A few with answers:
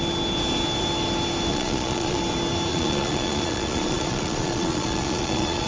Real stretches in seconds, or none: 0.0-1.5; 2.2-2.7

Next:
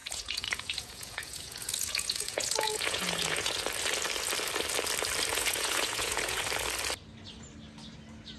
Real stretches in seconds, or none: 3.5-5.3; 6.4-8.4

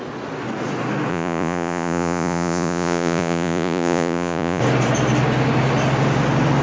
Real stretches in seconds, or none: 0.0-1.1; 4.6-6.6

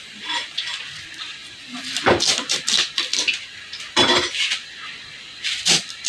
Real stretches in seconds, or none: 0.0-6.1